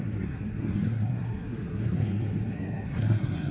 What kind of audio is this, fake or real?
fake